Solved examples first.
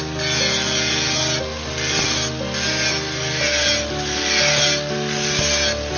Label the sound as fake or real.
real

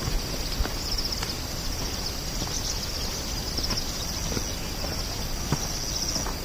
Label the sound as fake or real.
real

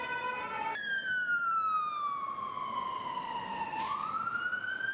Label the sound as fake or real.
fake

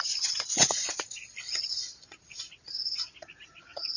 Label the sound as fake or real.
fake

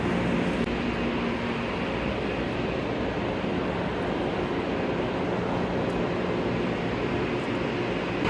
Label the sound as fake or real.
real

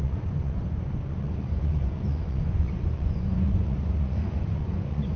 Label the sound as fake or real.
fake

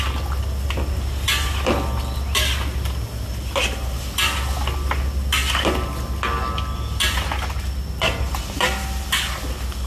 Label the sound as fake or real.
real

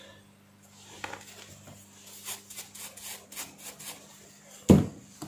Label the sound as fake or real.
real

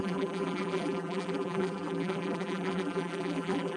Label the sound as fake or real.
fake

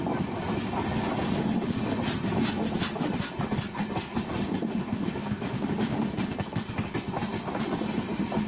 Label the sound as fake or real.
real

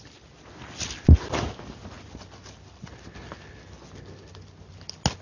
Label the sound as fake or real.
real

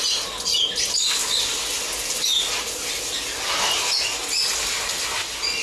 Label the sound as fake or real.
real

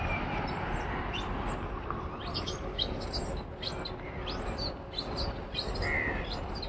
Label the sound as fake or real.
real